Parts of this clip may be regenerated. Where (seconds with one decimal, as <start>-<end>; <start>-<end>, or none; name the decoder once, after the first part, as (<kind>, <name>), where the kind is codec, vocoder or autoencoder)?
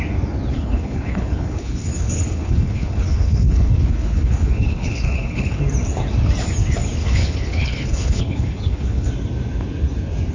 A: 0.5-5.6 (codec, HILCodec); 7.0-9.1